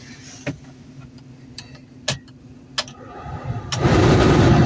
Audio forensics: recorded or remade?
recorded